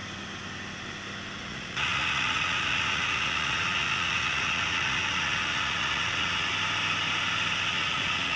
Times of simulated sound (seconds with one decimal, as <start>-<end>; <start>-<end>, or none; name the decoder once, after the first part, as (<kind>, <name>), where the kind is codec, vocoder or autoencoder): 1.4-6.5 (vocoder, Vocos); 7.7-8.4